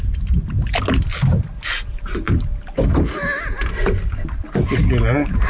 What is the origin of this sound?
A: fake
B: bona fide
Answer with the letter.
B